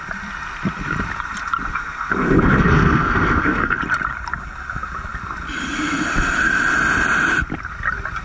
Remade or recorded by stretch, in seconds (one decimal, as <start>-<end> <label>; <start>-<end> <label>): 0.0-1.7 recorded; 1.7-3.8 remade; 3.8-8.2 recorded